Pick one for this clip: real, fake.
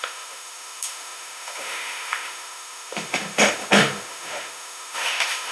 fake